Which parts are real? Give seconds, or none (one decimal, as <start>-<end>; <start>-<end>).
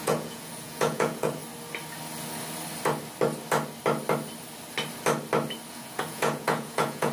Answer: 1.4-5.7